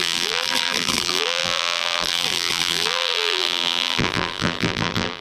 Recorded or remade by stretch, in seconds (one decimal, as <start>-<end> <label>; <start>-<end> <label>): 0.0-5.2 remade